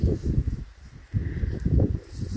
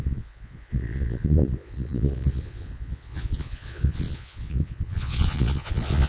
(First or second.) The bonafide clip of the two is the first